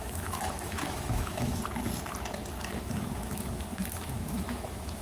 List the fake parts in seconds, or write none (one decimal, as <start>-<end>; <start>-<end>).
0.0-1.6; 2.6-5.0